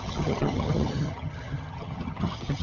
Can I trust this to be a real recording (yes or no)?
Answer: no